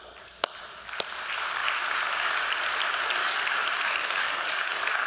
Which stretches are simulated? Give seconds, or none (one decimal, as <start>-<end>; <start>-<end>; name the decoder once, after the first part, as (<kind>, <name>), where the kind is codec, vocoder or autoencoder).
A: 3.2-5.1 (codec, DAC)